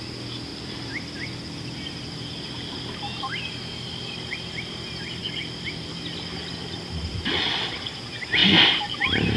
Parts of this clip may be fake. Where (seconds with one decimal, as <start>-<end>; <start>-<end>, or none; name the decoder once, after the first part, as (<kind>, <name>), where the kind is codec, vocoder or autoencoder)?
0.5-2.0 (vocoder, BigVGAN v2); 5.2-5.9; 6.6-8.0; 8.4-9.4